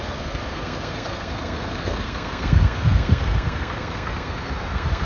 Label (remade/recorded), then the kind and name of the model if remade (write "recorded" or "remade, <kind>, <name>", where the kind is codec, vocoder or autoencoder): remade, codec, SNAC